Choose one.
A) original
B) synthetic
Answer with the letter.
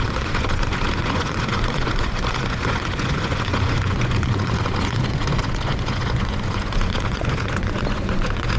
B